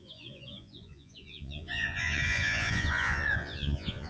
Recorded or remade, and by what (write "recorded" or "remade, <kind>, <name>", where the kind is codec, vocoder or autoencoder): remade, vocoder, Vocos